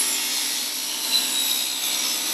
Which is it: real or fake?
real